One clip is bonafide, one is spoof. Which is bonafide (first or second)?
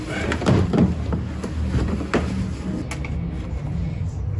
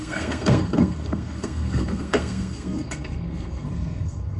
first